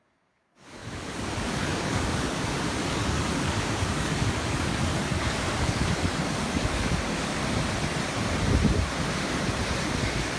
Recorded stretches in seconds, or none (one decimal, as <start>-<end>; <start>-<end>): 7.4-10.0